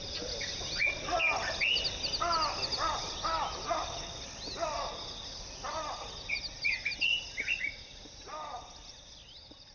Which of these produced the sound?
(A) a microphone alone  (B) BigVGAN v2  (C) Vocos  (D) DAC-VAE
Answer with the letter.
A